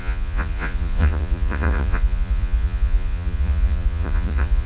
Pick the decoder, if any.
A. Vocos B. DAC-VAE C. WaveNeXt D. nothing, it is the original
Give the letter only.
A